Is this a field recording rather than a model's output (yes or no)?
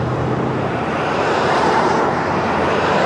no